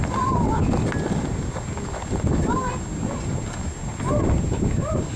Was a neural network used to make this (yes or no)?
no